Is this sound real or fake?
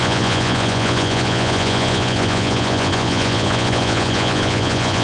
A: fake